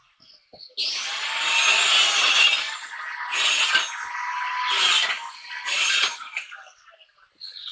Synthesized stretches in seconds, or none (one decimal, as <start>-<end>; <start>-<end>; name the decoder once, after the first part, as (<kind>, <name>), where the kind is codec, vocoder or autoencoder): none